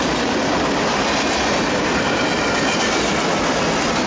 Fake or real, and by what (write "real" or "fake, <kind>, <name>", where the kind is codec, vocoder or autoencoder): real